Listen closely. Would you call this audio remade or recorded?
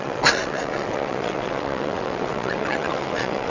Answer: remade